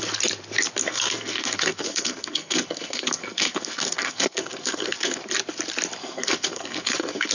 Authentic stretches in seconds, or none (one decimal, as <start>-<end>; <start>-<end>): 0.0-0.8; 5.2-6.0